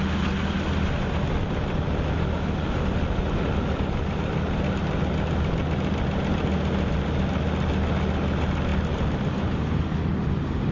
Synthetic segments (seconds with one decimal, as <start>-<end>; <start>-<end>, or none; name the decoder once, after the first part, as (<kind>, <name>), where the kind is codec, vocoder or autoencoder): none